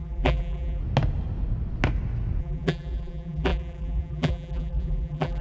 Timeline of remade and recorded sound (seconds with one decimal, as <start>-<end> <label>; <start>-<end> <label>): 0.0-0.8 remade; 0.8-2.4 recorded; 2.4-5.4 remade